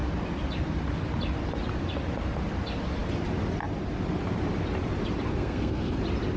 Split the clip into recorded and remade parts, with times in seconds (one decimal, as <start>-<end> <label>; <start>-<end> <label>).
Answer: 0.0-5.3 recorded; 5.3-6.0 remade; 6.0-6.4 recorded